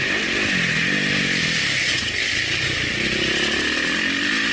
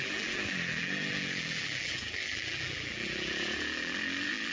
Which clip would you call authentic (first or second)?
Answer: first